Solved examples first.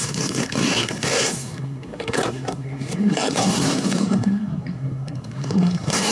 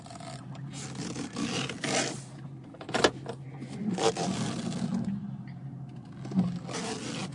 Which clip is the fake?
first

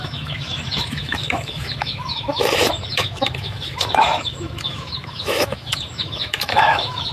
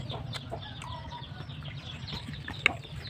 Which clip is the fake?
first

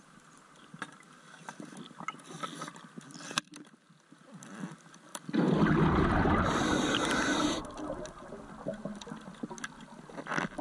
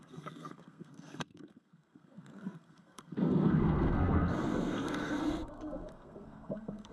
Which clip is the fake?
second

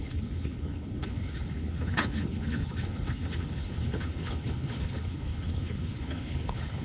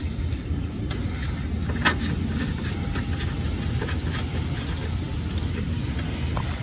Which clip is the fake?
first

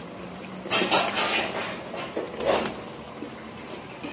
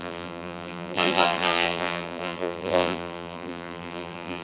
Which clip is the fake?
second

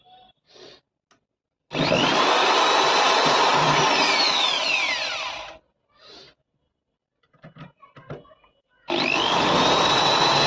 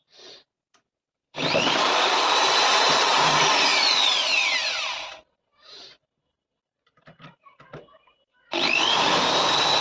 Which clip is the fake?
second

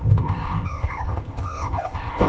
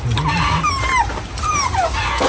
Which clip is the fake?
first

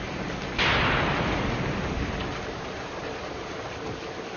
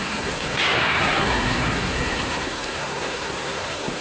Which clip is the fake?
second